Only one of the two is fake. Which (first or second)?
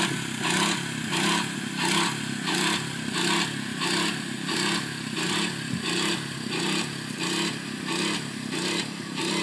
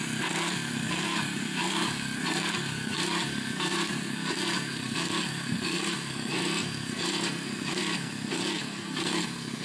second